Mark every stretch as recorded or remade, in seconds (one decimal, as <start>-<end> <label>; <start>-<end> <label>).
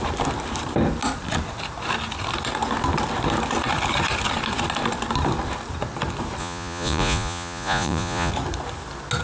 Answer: 0.0-6.4 recorded; 6.4-8.3 remade; 8.3-9.2 recorded